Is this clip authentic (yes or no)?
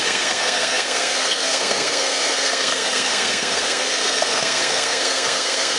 no